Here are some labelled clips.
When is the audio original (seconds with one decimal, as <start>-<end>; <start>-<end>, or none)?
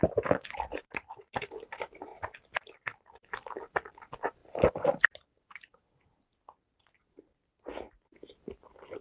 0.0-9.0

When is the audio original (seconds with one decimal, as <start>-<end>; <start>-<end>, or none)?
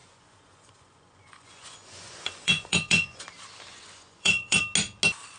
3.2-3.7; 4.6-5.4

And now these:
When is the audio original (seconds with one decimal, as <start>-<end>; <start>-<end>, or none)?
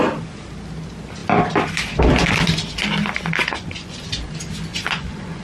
0.0-3.4; 4.1-4.7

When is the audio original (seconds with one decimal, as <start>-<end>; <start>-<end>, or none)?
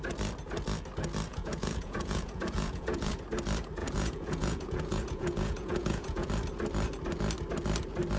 0.0-1.3; 3.1-3.8; 6.3-8.2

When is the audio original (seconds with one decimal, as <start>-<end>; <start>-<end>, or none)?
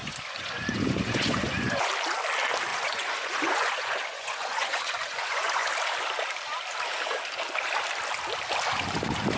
1.9-2.7; 5.7-9.4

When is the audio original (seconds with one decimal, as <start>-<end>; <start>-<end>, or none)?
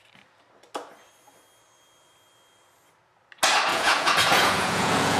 0.0-3.7